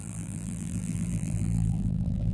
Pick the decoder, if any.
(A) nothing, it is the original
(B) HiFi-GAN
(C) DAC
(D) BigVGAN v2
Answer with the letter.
D